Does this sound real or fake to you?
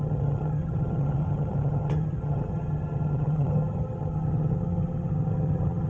fake